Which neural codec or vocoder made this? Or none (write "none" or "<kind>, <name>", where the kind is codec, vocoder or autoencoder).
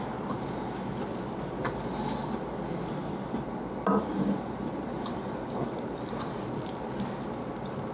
none